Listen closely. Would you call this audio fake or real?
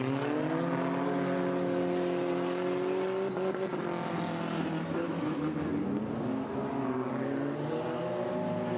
real